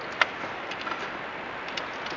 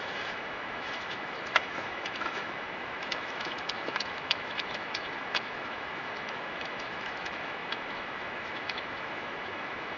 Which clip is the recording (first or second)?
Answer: first